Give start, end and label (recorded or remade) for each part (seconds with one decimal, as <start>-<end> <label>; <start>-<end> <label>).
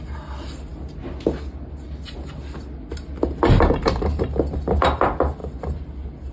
0.0-6.3 recorded